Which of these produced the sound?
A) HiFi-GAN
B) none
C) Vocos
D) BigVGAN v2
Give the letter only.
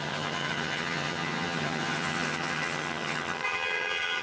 A